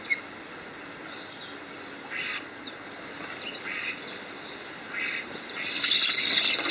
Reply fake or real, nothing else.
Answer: real